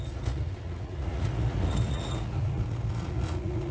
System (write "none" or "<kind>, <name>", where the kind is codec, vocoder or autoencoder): vocoder, Vocos